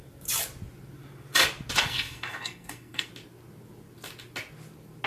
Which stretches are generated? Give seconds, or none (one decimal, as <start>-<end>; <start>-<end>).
1.8-3.1